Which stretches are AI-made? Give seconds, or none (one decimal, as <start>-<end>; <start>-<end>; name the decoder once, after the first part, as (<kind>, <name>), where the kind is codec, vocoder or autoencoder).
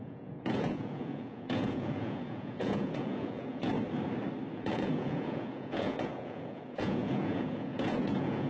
0.0-3.7 (vocoder, Vocos); 4.5-8.5